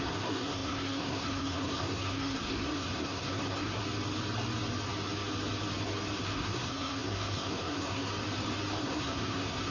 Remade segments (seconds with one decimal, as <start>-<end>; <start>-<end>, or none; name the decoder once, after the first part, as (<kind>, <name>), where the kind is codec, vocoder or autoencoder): 0.0-3.8 (codec, SNAC); 6.2-8.1; 8.8-9.7